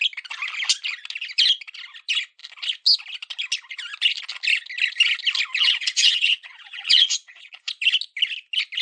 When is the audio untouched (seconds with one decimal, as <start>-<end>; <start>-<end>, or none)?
0.0-5.6; 7.7-8.8